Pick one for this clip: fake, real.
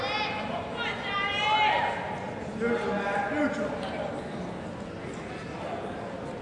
real